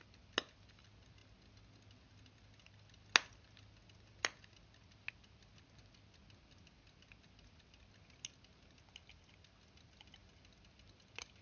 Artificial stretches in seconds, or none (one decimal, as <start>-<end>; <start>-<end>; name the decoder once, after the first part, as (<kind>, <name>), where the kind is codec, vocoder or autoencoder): none